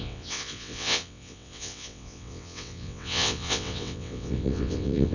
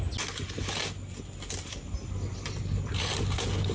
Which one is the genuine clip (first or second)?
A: second